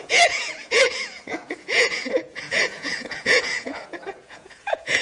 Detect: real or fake fake